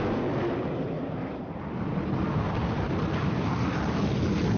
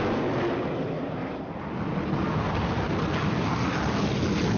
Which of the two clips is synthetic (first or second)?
first